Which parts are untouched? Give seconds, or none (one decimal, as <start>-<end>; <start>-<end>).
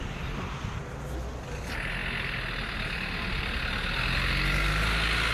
0.0-5.3